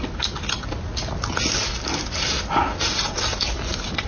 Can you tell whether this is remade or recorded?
recorded